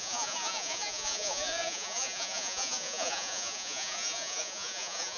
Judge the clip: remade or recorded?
remade